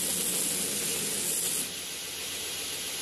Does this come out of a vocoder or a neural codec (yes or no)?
no